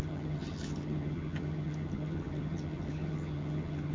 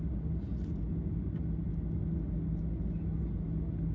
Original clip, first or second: second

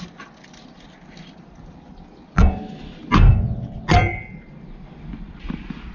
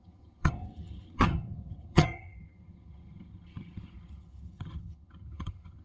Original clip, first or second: first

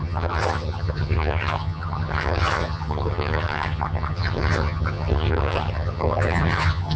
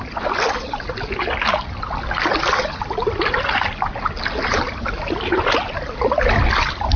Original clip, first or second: second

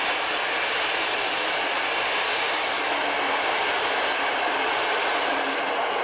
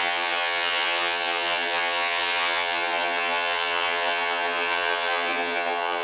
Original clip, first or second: first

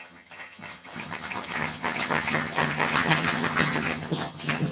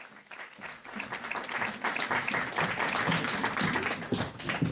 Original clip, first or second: second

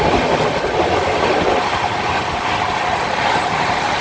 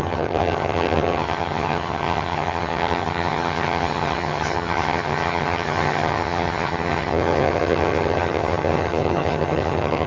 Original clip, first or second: first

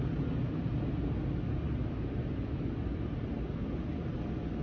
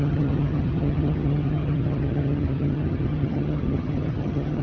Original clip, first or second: first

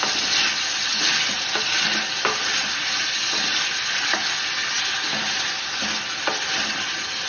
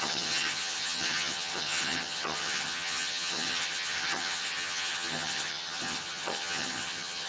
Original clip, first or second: first